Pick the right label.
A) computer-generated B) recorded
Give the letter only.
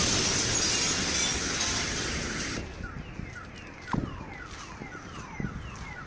B